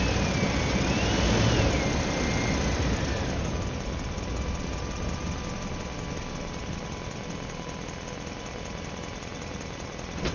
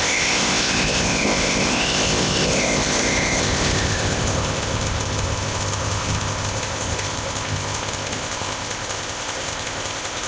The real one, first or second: first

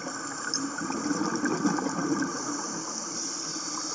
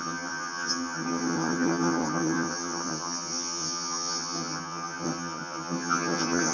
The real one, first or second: first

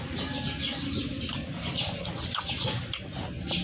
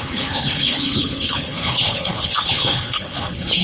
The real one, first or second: first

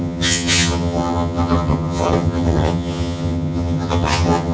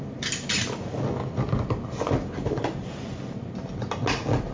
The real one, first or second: second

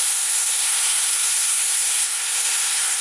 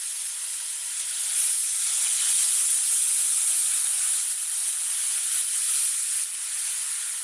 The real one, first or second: second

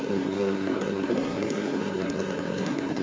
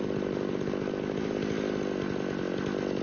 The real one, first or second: second